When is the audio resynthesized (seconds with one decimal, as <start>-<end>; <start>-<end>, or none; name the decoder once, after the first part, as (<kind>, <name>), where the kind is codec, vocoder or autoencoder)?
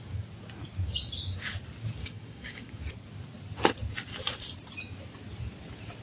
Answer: 2.0-2.8 (codec, DAC)